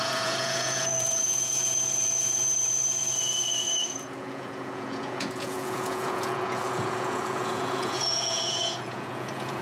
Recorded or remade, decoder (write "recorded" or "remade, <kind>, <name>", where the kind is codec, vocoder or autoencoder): remade, vocoder, Vocos